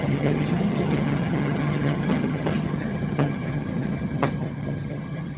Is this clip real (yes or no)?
no